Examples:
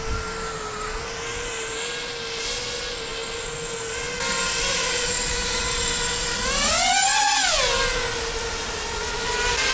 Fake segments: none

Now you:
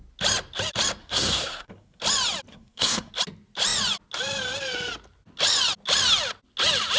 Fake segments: 1.0-2.0 (codec, SNAC); 2.5-3.1